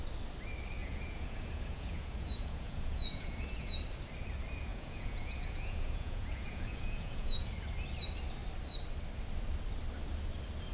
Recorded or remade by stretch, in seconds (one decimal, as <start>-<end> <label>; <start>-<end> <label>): 0.0-0.8 recorded; 0.8-3.8 remade; 3.8-4.7 recorded; 4.7-7.5 remade; 7.5-10.7 recorded